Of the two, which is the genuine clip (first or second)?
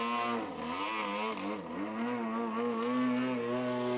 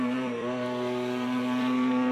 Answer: first